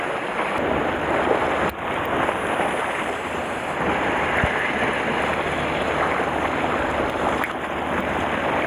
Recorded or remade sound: recorded